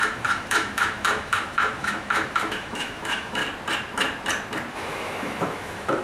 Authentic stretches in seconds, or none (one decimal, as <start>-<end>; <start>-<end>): 3.4-4.7